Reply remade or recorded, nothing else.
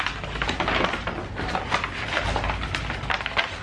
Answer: recorded